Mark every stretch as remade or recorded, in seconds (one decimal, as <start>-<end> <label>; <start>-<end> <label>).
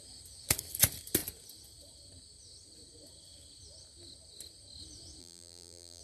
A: 0.0-5.2 recorded; 5.2-6.0 remade